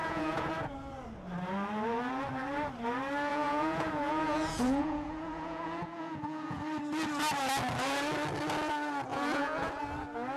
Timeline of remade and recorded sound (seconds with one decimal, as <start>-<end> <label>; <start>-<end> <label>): 0.0-0.5 remade; 0.5-3.3 recorded; 3.3-6.6 remade; 6.6-9.1 recorded; 9.1-9.7 remade; 9.7-10.4 recorded